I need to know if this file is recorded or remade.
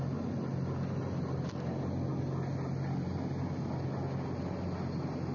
recorded